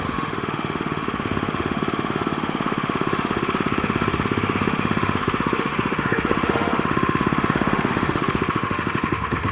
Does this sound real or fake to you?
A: fake